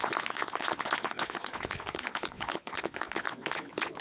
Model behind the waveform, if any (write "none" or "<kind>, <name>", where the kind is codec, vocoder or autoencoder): vocoder, Vocos